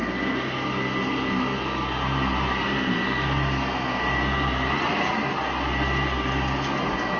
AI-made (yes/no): no